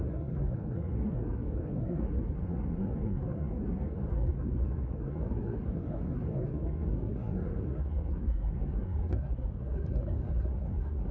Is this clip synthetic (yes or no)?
yes